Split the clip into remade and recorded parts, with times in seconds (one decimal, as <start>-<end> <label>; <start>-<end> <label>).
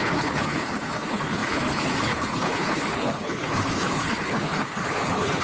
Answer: 0.0-5.4 remade